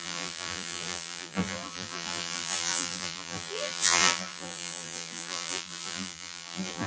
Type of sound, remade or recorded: remade